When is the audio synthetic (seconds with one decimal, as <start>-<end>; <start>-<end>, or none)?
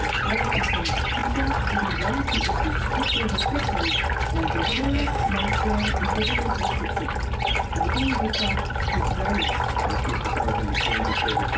4.7-5.3